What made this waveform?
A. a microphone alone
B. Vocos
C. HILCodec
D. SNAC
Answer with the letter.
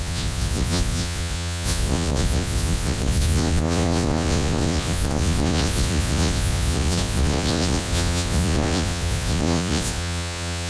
B